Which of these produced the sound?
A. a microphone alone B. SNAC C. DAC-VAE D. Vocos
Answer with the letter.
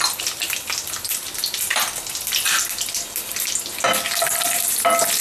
A